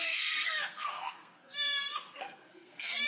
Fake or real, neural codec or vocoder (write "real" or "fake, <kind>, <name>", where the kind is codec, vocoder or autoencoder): fake, codec, SNAC